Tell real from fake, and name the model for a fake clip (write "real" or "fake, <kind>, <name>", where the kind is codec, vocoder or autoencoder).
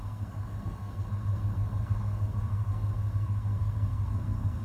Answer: fake, codec, SNAC